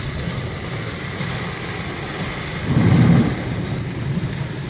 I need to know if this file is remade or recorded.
recorded